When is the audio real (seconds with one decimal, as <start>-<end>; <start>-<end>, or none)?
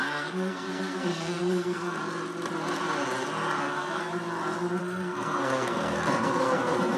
2.0-3.6; 4.1-4.8